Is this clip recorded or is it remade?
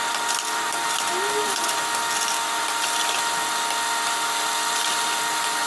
recorded